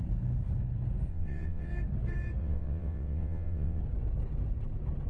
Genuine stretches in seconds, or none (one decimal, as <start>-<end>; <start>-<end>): 0.0-1.1; 1.7-2.4; 3.8-5.1